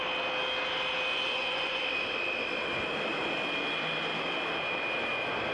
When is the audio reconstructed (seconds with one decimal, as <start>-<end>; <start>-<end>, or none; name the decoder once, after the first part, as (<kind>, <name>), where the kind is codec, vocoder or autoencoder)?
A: 1.1-1.8 (vocoder, Vocos)